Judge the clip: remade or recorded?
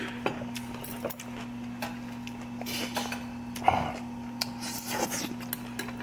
recorded